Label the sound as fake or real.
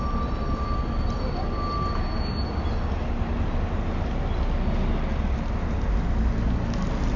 real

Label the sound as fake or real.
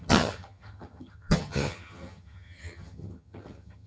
fake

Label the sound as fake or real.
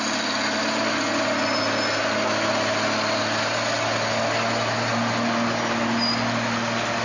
real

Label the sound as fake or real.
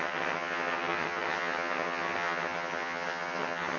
fake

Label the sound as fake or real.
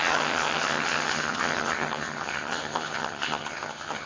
fake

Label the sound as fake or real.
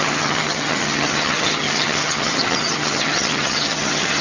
fake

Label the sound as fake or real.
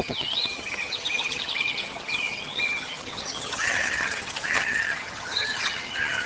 fake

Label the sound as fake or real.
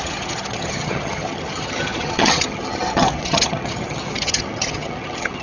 fake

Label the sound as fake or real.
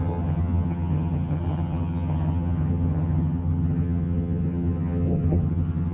fake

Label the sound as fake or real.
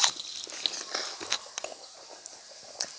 real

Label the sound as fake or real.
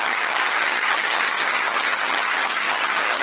fake